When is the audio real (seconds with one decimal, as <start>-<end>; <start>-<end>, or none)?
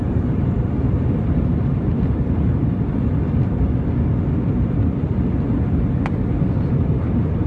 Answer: 2.5-6.7